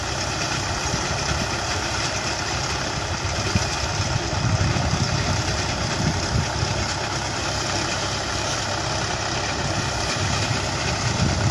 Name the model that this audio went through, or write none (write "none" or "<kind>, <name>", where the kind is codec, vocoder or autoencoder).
vocoder, BigVGAN v2